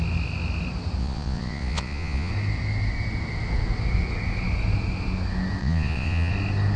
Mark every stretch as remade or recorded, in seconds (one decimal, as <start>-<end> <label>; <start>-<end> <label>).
0.0-1.0 recorded; 1.0-2.3 remade; 2.3-5.6 recorded; 5.6-6.3 remade; 6.3-6.8 recorded